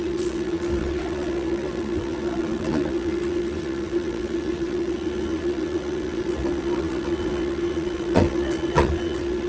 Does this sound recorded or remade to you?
remade